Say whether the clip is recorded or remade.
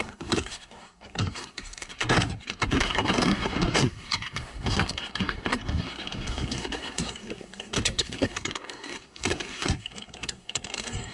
remade